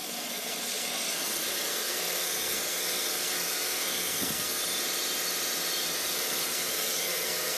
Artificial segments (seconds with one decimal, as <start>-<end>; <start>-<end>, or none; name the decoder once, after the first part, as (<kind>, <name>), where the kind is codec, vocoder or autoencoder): 0.0-4.6 (codec, SNAC); 5.8-7.6

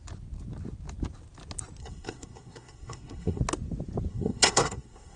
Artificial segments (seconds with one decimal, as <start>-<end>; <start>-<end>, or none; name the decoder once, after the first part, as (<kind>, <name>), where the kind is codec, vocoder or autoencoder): 1.8-3.4 (codec, SNAC); 4.1-5.2

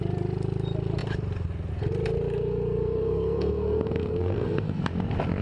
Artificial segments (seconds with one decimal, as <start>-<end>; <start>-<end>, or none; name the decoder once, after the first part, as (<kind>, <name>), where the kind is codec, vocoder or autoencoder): 2.3-4.8 (codec, SNAC)

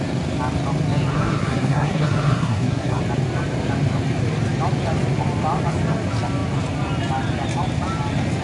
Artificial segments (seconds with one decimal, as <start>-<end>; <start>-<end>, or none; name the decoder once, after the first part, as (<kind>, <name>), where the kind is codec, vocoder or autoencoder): 1.1-3.0 (codec, SNAC)

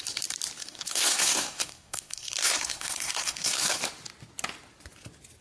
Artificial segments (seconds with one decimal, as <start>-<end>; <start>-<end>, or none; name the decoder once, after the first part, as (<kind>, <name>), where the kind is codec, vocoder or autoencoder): 0.6-3.8 (codec, SNAC)